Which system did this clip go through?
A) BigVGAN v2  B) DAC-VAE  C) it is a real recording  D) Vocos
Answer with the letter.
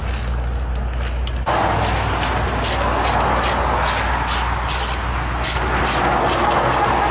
C